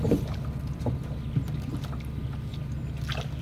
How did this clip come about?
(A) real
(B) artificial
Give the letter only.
A